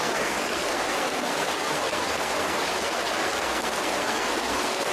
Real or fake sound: fake